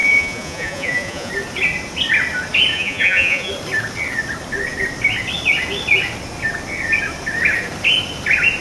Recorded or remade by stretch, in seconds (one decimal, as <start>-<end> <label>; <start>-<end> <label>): 0.0-1.3 remade; 1.3-2.7 recorded; 2.7-3.5 remade; 3.5-8.6 recorded